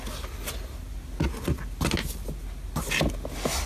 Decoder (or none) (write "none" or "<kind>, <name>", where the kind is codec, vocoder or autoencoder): none